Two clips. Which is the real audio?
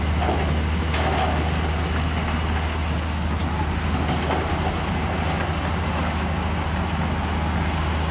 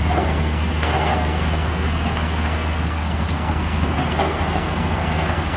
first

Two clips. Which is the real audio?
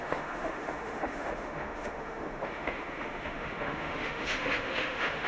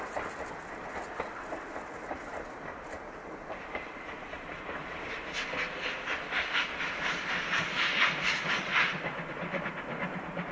second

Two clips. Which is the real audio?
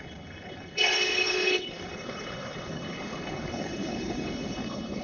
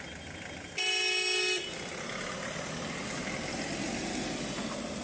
second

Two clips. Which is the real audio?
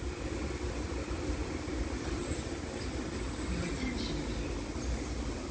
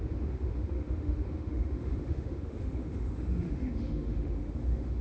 first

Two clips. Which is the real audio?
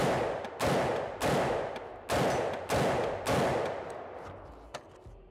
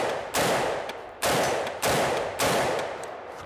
first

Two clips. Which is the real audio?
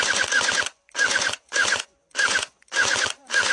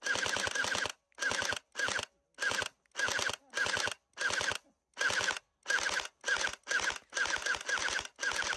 second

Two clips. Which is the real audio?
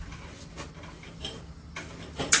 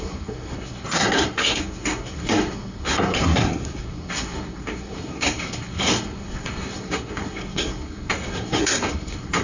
first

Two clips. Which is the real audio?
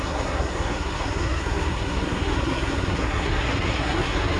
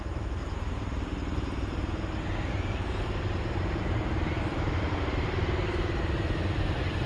second